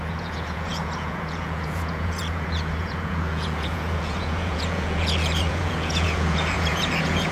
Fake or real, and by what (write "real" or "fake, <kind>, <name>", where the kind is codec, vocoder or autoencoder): fake, vocoder, Vocos